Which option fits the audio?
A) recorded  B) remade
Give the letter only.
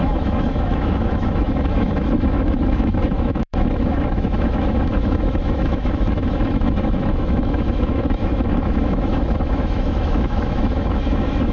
B